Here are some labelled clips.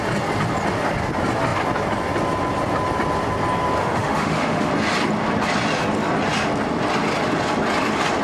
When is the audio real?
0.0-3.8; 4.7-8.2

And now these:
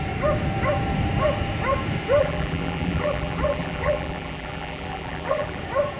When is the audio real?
0.0-2.2; 5.6-6.0